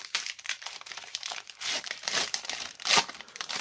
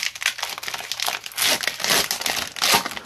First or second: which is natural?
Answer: second